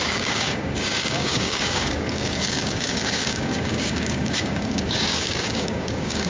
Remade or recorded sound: remade